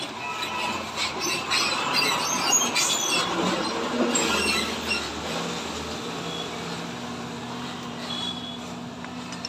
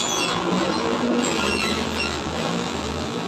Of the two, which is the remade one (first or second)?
second